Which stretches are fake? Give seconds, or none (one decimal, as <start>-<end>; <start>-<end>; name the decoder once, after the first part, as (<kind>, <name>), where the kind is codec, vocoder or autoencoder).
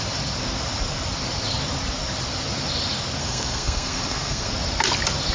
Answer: 3.2-4.5 (codec, SNAC)